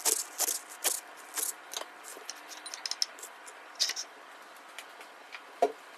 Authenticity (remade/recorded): recorded